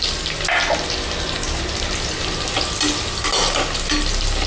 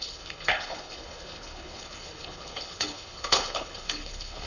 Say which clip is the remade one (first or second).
second